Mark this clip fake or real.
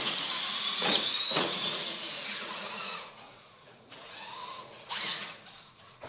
fake